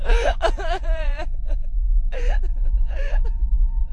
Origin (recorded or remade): remade